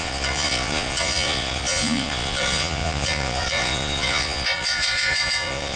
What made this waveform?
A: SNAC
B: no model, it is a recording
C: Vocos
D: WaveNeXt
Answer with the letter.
C